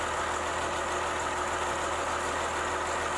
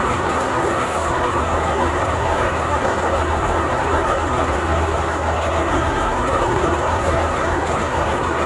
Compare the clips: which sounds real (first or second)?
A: first